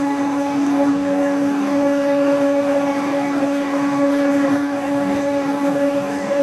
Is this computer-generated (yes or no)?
yes